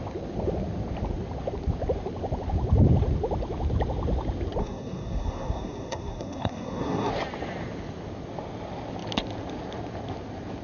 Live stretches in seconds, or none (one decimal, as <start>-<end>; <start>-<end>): 0.0-4.6; 7.1-10.6